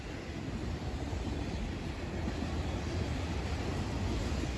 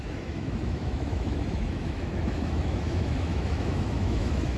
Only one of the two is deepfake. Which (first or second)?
second